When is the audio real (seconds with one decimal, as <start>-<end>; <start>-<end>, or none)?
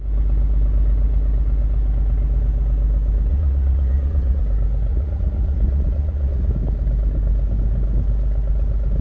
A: 0.0-3.3; 4.4-4.9; 6.5-9.0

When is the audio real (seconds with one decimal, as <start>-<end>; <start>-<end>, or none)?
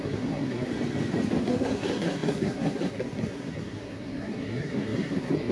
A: 0.7-1.4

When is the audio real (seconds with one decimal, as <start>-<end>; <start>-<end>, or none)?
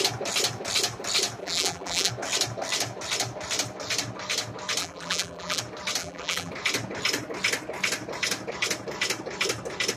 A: 0.0-1.4; 2.1-4.8; 5.6-6.0; 6.5-10.0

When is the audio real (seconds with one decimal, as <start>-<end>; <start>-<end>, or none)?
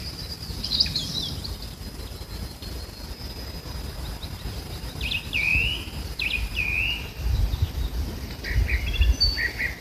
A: 0.0-9.8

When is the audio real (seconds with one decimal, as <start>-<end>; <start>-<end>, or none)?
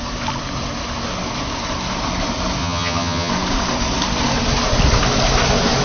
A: 0.0-2.6; 3.3-5.8